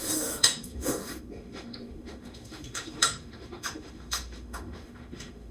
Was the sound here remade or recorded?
remade